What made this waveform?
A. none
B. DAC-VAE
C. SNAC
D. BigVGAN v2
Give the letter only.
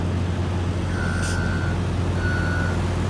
A